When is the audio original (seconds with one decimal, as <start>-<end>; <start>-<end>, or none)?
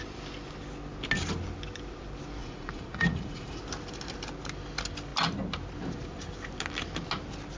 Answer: 0.0-2.4; 3.6-7.6